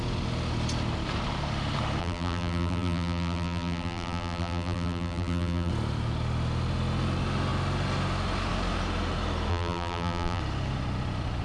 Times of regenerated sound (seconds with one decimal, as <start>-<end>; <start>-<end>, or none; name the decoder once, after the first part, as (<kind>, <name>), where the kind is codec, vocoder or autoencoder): 2.0-5.7 (vocoder, BigVGAN v2); 9.5-10.4